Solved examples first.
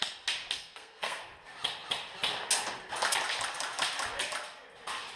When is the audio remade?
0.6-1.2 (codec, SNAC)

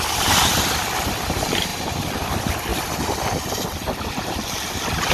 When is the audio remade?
none

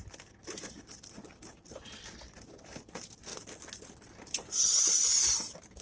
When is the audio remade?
none

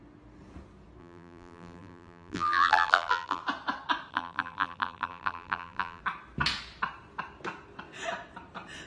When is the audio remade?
1.0-3.4 (vocoder, BigVGAN v2); 4.1-6.0

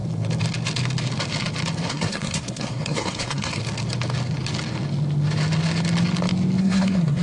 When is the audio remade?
1.9-3.6 (codec, SNAC); 6.6-7.2